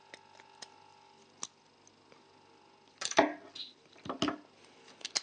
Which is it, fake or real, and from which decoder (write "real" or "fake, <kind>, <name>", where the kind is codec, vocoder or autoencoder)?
real